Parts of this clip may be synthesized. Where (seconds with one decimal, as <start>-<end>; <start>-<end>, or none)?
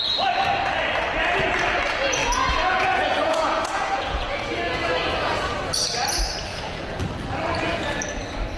2.2-5.4; 6.5-7.0